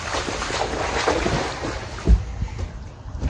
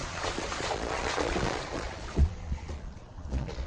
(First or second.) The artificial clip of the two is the second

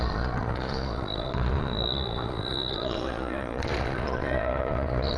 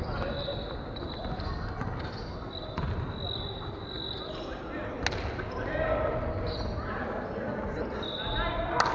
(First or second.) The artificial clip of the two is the first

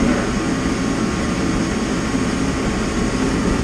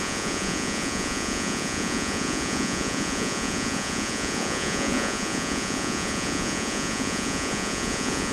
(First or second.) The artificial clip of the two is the second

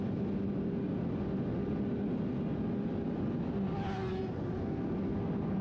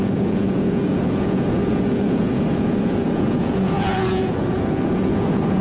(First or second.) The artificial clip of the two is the second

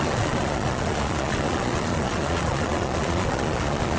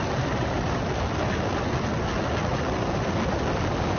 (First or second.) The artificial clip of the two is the first